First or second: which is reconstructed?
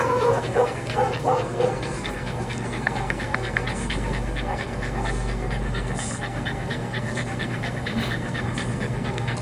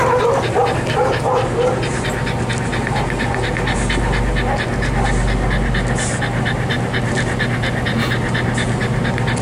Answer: first